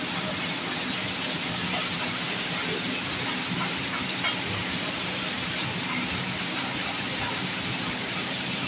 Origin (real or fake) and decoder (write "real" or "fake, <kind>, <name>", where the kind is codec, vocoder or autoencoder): real